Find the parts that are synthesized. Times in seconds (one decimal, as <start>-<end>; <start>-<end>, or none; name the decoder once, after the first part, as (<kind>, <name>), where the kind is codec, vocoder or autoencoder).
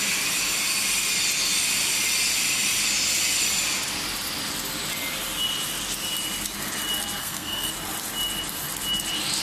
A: 7.2-7.7 (codec, SNAC)